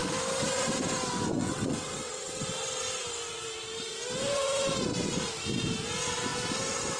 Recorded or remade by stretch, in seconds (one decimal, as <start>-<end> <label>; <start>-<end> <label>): 0.0-1.4 recorded; 1.4-2.4 remade; 2.4-7.0 recorded